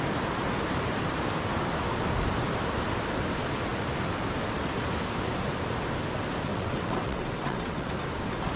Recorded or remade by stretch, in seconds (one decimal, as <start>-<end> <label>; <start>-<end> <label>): 0.0-6.5 recorded; 6.5-7.9 remade; 7.9-8.6 recorded